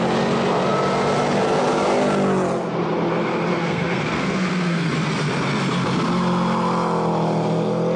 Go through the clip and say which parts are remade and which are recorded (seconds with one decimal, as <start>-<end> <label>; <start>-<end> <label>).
0.0-3.5 recorded; 3.5-4.9 remade; 4.9-8.0 recorded